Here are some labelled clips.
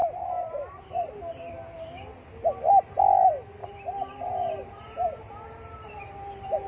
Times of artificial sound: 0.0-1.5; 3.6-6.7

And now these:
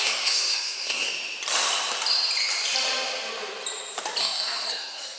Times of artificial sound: 0.0-1.1; 4.2-5.2

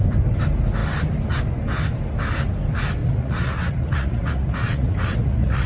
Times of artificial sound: 3.0-5.7